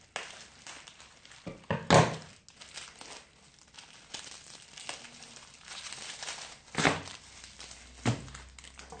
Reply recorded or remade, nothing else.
recorded